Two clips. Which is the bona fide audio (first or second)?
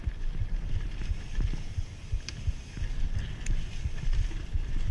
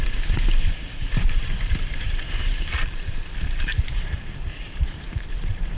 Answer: first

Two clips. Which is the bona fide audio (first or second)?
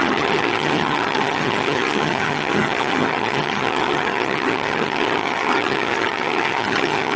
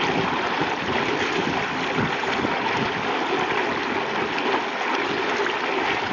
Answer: second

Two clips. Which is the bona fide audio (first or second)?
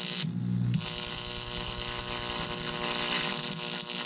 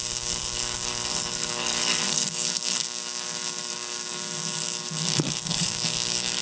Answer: first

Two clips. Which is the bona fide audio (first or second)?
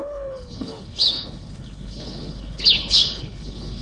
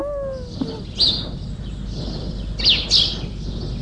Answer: second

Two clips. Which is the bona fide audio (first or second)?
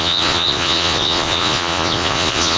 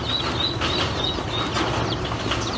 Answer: second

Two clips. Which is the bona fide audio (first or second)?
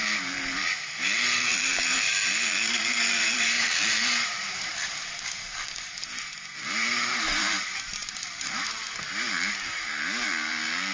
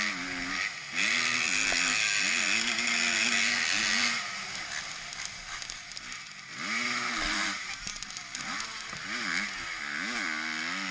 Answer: second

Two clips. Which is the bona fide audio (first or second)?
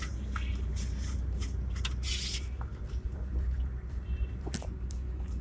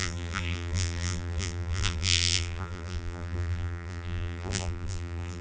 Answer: first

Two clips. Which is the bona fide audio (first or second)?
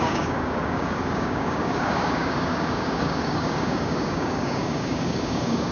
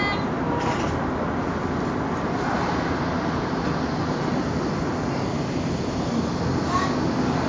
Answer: second